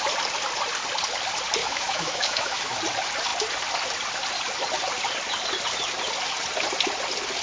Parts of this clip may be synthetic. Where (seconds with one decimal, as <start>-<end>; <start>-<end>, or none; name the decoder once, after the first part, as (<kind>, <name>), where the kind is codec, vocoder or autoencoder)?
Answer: 1.6-2.8 (autoencoder, DAC-VAE)